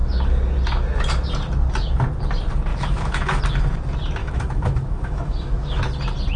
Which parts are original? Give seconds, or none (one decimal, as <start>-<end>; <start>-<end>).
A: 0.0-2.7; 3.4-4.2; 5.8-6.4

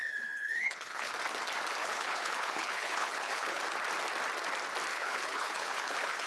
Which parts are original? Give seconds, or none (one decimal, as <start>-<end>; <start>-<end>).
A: 1.1-1.8; 3.6-4.9

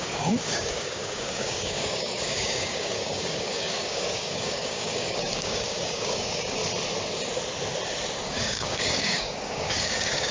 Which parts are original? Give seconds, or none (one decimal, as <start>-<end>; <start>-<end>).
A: 6.6-8.3

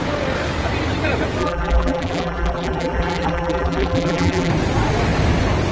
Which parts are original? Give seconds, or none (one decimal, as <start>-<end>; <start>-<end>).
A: 0.0-1.4; 4.5-5.7

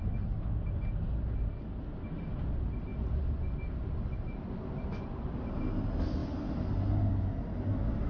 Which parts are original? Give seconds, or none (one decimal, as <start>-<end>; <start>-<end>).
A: 0.0-8.1

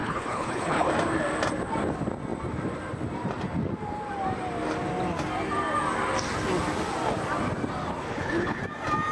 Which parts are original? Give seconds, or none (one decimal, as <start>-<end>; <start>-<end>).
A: 0.9-8.0; 8.6-9.1

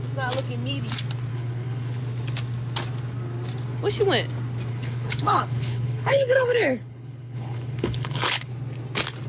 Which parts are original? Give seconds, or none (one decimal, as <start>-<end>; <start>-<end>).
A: 0.0-1.3; 2.0-4.7; 8.5-9.3

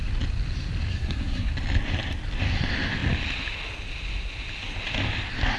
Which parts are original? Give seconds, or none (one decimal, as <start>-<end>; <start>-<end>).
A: 0.0-0.9; 1.5-5.6